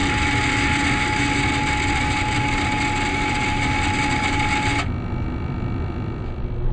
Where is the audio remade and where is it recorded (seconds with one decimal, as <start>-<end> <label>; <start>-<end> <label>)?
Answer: 0.0-6.7 recorded